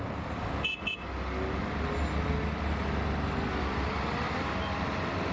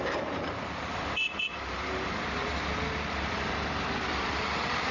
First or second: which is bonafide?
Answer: first